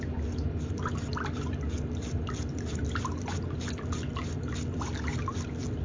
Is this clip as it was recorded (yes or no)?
yes